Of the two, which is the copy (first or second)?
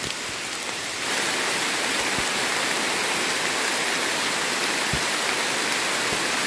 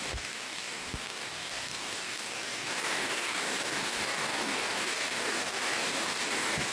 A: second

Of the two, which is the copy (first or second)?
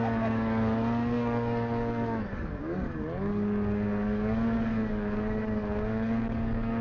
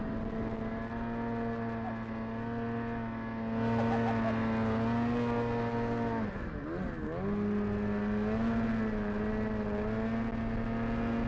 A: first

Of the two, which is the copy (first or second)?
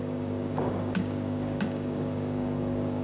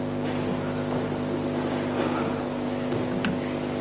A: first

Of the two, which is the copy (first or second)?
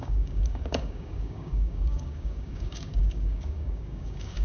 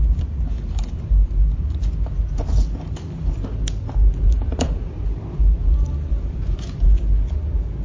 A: first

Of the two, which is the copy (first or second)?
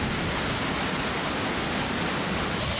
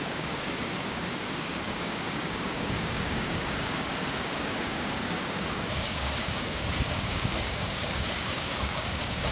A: second